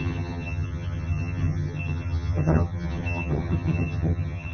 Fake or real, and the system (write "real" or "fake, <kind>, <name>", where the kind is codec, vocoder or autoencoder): fake, vocoder, HiFi-GAN